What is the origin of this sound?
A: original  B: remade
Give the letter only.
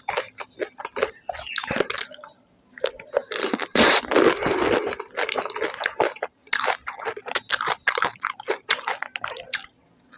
A